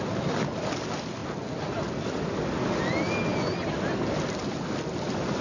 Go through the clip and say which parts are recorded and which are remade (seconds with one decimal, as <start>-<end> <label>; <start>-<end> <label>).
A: 0.0-5.4 recorded